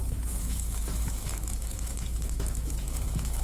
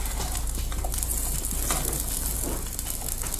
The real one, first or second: second